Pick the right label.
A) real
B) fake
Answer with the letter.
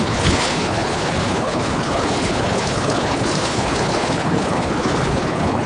B